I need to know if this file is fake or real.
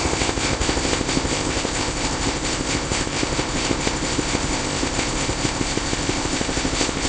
fake